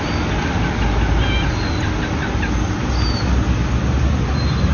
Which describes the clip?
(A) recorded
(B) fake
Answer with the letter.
A